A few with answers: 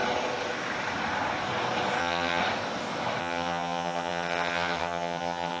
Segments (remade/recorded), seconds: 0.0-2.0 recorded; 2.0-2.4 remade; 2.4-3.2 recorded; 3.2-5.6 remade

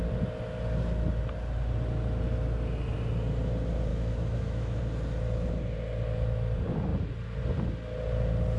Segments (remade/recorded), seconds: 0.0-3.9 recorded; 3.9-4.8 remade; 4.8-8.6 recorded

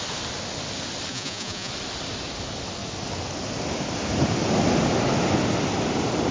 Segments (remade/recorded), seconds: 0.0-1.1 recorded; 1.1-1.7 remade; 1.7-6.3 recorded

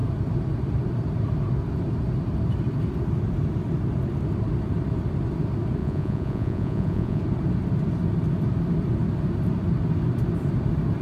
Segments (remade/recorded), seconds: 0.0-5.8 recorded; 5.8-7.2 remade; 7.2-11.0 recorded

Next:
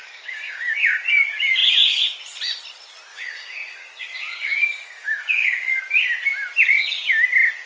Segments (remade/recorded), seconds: 0.0-1.0 remade; 1.0-3.1 recorded; 3.1-5.8 remade; 5.8-7.7 recorded

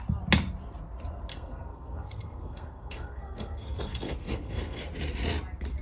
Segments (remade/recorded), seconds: 0.0-1.3 recorded; 1.3-4.8 remade; 4.8-5.8 recorded